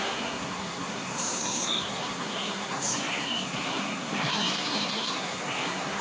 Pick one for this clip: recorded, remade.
remade